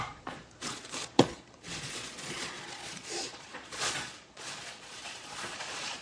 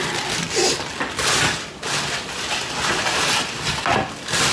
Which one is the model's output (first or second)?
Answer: first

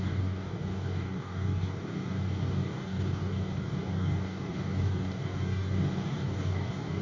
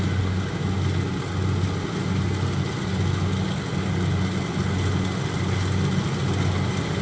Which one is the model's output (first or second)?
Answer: first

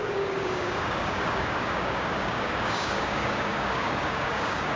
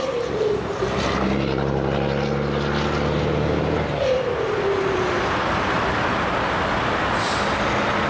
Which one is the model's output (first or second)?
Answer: first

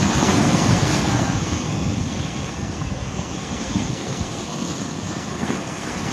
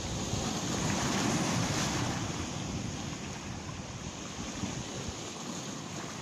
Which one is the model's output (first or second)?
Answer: first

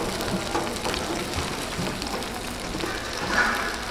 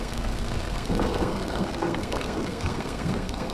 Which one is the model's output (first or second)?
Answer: second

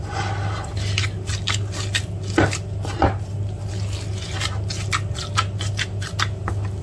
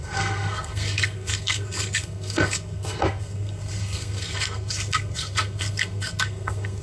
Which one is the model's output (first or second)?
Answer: second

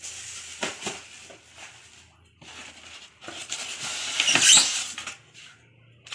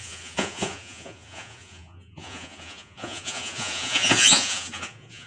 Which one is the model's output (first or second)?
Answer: second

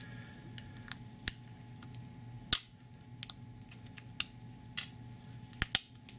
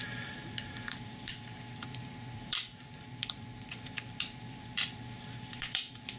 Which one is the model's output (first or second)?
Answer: second